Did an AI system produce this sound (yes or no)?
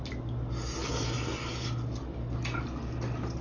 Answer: no